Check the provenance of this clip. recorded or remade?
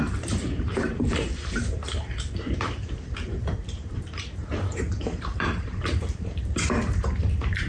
remade